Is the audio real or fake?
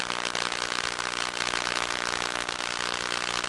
real